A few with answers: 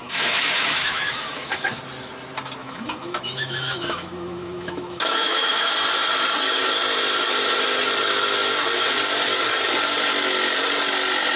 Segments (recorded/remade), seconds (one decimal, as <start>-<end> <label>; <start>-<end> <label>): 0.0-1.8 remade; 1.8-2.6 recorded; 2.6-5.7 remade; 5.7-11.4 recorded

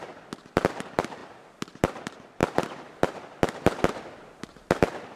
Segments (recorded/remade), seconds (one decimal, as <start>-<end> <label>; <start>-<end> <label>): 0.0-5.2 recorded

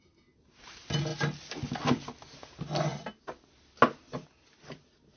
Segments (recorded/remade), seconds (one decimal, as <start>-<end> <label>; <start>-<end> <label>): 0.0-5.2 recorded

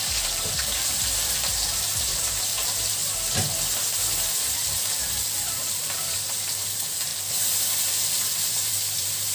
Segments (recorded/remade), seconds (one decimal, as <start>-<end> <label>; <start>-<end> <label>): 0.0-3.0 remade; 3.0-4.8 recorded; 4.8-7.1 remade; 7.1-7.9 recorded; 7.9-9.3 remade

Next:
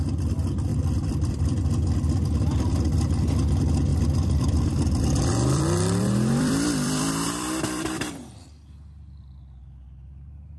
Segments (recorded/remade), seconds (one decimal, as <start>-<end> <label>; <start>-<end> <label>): 0.0-0.7 recorded; 0.7-1.3 remade; 1.3-3.9 recorded; 3.9-8.1 remade; 8.1-10.6 recorded

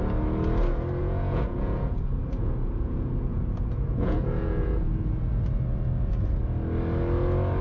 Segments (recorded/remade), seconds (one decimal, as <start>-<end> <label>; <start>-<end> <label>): 0.0-1.0 recorded; 1.0-5.2 remade; 5.2-7.6 recorded